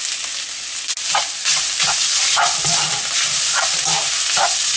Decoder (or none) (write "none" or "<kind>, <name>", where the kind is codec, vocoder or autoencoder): none